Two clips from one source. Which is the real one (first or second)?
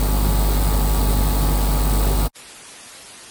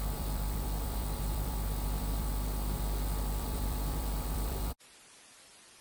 first